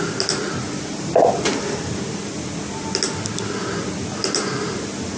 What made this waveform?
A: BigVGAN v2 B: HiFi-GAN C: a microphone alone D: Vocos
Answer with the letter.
C